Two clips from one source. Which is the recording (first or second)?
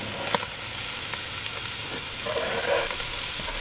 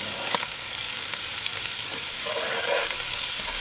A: first